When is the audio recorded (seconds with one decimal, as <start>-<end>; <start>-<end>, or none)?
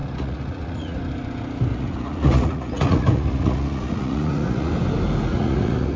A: 1.0-1.7; 4.7-5.3